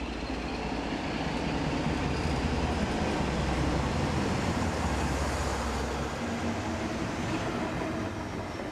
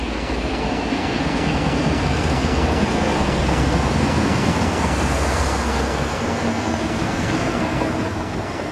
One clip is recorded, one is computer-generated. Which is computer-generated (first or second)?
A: second